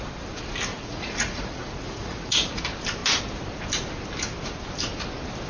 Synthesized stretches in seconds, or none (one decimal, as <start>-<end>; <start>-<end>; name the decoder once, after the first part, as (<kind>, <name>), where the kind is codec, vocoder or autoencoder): 0.7-2.6 (vocoder, Vocos)

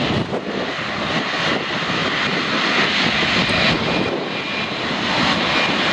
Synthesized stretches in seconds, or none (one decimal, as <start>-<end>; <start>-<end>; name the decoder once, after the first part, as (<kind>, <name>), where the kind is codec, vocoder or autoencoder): none

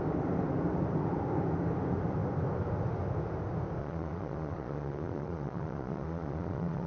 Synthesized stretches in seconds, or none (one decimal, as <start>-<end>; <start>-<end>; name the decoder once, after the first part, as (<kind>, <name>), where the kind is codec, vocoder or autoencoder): 3.8-6.9 (vocoder, Vocos)

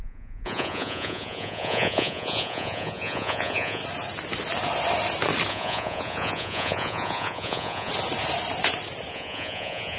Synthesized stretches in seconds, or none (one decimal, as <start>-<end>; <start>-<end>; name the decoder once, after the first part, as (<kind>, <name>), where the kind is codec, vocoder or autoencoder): 0.0-3.8 (vocoder, Vocos); 5.5-7.9; 9.1-10.0